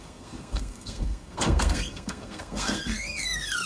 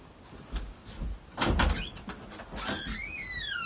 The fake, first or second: first